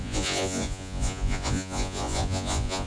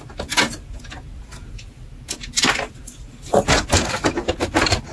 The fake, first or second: first